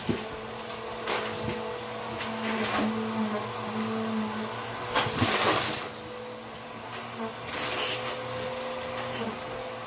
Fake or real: real